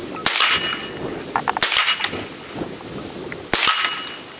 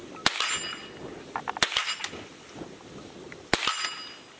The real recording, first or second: first